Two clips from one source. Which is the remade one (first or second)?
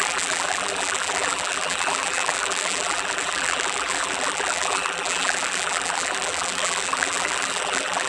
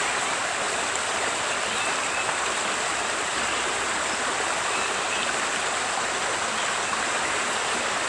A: first